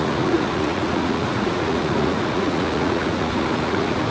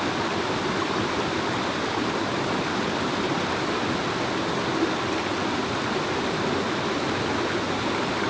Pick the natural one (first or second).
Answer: second